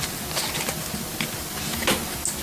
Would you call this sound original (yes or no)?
yes